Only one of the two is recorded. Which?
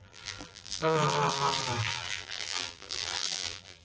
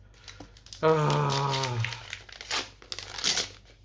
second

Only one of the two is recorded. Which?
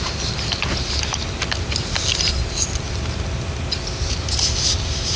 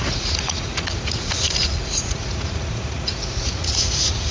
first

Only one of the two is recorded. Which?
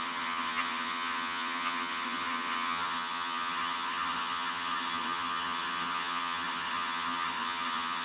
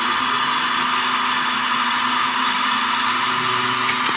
second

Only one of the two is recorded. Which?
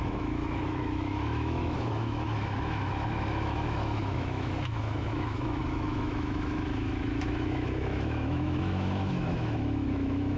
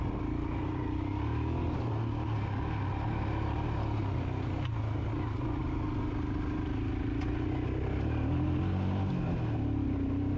second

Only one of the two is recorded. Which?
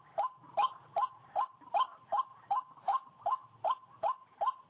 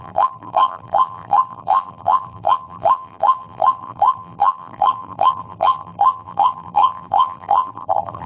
first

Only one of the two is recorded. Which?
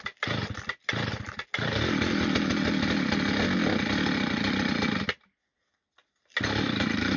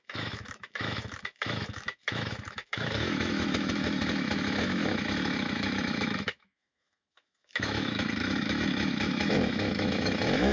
first